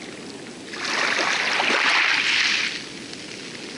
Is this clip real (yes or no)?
yes